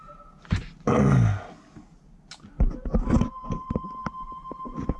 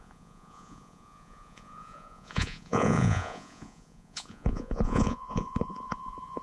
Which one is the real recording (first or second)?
first